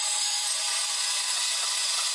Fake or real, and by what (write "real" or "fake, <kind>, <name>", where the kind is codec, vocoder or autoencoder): fake, vocoder, Vocos